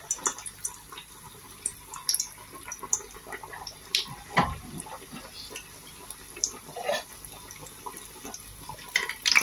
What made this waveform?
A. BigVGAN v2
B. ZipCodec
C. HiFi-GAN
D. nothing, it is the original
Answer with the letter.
A